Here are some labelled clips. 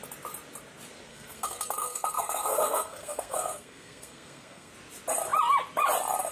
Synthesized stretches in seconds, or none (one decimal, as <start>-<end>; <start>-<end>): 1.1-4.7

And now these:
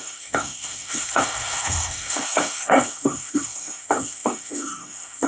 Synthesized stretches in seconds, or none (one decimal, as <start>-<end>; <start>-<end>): 0.0-5.3

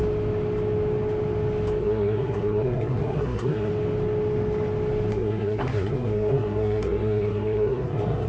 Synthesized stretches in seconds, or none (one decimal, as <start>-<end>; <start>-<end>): 1.8-3.7; 5.1-8.3

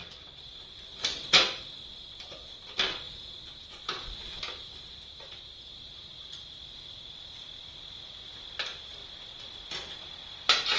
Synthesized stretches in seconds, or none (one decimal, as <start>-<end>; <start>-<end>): none

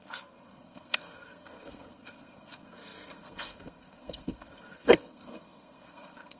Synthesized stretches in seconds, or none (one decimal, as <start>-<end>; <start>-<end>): 0.0-6.4

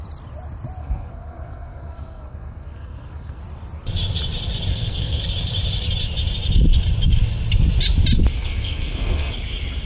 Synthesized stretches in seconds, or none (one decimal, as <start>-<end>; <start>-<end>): 0.8-3.4; 4.7-5.2; 8.4-9.3

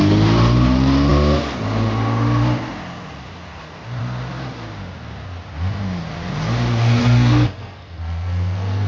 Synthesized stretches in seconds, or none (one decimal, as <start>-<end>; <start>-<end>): 7.0-8.9

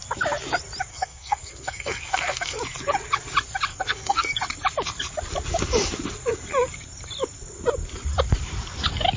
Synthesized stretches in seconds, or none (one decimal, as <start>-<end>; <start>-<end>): 0.9-2.6; 3.7-4.4